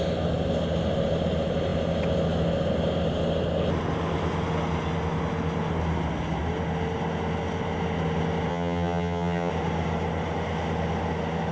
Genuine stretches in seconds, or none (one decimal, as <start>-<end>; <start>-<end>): 0.0-8.5; 9.5-11.5